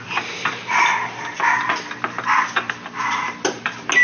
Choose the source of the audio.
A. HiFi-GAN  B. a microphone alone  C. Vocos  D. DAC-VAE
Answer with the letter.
B